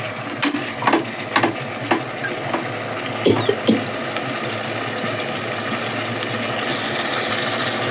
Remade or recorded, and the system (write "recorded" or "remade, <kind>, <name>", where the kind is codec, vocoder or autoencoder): recorded